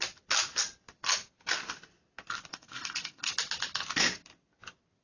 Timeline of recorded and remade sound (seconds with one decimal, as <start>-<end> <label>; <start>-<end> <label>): 0.0-2.5 recorded; 2.5-3.3 remade; 3.3-5.0 recorded